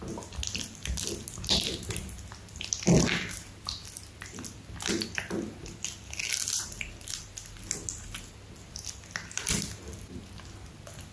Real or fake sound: real